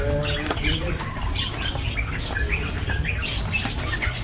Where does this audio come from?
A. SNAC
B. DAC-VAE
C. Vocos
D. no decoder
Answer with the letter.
D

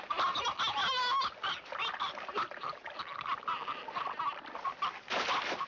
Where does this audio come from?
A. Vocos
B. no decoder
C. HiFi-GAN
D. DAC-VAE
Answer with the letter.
B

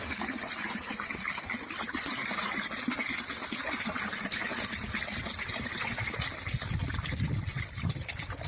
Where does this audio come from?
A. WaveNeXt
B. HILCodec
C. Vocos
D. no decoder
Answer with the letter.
D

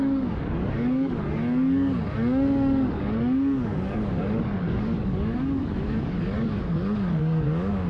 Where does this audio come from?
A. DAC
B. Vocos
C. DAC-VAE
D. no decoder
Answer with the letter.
A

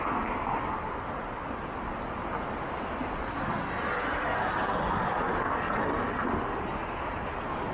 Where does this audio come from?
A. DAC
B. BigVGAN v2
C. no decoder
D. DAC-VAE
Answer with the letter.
C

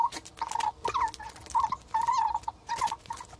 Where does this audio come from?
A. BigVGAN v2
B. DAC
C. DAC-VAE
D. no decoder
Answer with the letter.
D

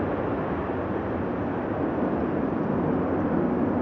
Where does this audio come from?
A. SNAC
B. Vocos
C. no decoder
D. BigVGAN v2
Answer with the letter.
C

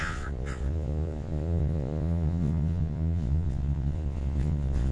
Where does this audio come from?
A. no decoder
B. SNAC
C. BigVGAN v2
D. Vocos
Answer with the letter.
D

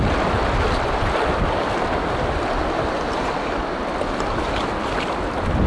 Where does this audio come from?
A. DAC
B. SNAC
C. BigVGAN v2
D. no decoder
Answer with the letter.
D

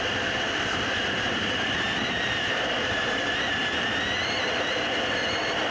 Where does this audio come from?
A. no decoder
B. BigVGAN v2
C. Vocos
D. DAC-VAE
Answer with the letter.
B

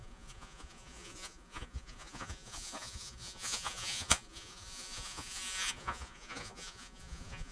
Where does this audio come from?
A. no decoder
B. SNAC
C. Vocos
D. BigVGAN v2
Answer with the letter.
C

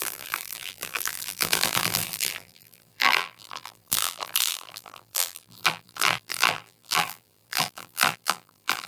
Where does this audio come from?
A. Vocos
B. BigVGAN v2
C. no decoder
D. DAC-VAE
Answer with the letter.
B